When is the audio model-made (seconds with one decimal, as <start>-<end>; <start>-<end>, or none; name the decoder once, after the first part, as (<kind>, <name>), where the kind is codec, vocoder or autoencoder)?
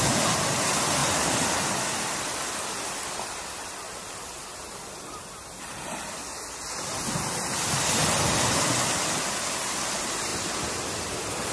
none